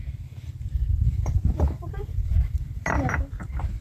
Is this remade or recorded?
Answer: remade